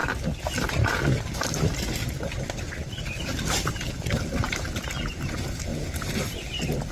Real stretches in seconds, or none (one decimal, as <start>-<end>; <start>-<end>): 0.0-2.8; 3.7-5.7; 6.2-6.9